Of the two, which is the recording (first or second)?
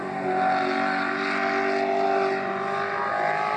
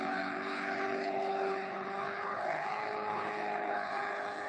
first